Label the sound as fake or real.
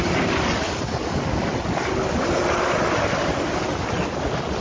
real